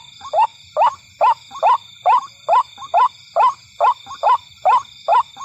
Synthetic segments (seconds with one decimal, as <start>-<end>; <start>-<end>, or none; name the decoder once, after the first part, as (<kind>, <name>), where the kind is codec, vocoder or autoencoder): none